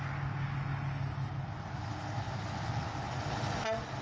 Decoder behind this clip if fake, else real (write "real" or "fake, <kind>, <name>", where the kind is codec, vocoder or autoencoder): real